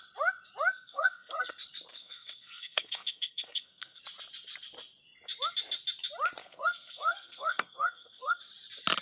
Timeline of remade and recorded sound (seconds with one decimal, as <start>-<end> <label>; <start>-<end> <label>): 0.0-0.7 recorded; 0.7-1.5 remade; 1.5-1.9 recorded; 1.9-4.0 remade; 4.0-6.4 recorded; 6.4-8.4 remade; 8.4-9.0 recorded